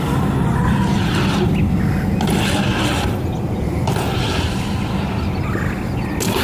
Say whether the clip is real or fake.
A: real